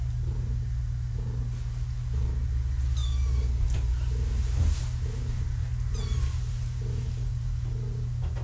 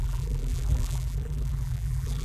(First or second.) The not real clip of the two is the second